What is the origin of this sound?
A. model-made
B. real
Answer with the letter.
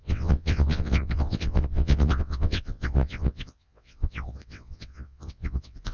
A